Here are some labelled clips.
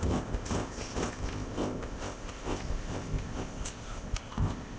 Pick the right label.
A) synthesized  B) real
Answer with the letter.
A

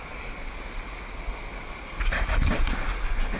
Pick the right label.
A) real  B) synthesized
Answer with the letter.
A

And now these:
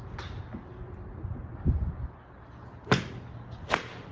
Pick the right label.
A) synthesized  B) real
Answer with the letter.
B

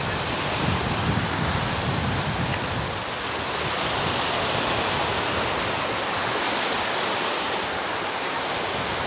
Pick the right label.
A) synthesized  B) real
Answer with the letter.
B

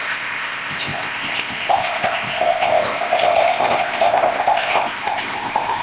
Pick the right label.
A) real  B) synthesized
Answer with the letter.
B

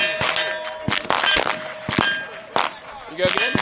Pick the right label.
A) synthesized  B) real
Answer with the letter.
B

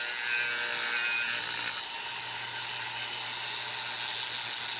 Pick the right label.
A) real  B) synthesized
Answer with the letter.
A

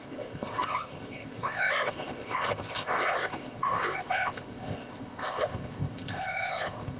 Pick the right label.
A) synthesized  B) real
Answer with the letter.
A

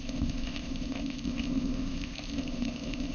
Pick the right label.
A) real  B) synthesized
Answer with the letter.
B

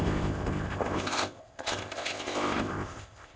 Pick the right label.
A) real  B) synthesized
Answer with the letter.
B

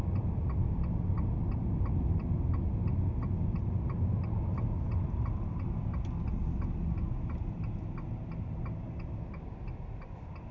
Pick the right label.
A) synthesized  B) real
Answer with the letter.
B